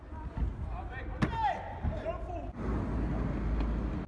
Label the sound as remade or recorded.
recorded